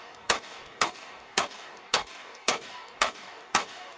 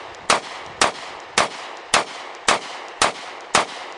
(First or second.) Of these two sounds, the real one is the second